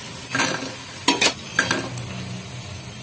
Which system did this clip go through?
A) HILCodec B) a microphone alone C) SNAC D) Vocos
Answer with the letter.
B